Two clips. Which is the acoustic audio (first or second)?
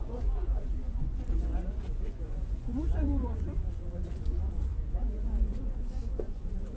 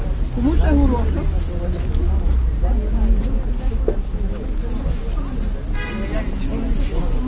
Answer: second